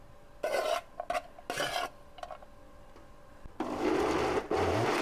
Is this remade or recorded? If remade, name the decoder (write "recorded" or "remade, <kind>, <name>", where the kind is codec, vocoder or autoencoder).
recorded